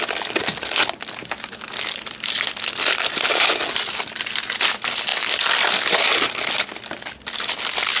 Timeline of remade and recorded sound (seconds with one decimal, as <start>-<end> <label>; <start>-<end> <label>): 0.0-8.0 recorded